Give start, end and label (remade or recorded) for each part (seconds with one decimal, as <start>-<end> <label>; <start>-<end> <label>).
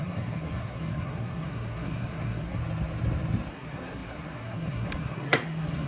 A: 0.0-2.6 remade; 2.6-3.5 recorded; 3.5-5.9 remade